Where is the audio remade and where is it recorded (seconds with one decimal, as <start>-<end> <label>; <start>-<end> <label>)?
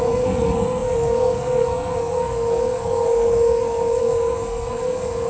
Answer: 0.0-5.3 remade